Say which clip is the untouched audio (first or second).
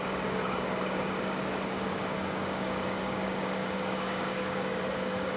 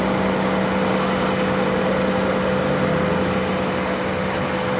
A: second